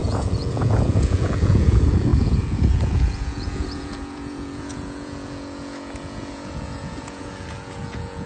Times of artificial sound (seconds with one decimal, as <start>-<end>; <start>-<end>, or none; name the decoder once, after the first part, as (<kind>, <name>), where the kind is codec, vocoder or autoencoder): 0.0-8.3 (vocoder, Vocos)